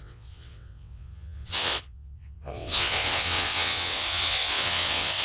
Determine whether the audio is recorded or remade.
remade